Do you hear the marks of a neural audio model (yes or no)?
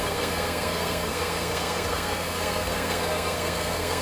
yes